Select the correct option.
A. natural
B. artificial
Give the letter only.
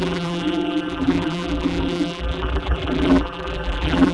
B